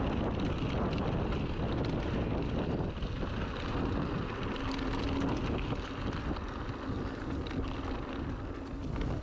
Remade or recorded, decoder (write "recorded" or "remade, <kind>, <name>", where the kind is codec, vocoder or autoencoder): recorded